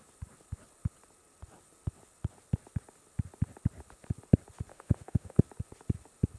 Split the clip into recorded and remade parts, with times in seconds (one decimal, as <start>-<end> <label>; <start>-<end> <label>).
0.0-4.7 recorded; 4.7-5.4 remade; 5.4-6.4 recorded